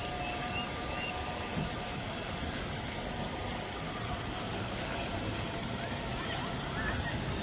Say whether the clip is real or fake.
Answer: real